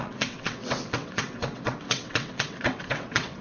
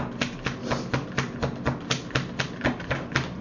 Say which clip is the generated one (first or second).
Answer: first